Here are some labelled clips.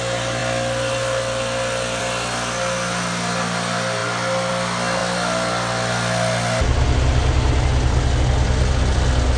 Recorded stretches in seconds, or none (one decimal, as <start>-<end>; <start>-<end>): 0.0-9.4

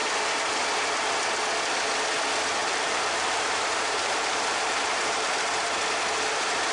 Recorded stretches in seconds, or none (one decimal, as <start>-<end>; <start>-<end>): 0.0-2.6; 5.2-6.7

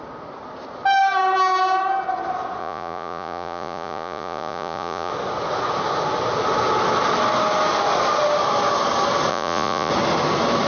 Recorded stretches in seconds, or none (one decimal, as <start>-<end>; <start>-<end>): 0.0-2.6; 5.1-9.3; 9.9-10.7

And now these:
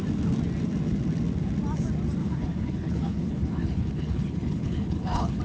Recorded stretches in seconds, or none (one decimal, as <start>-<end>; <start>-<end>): 0.0-2.2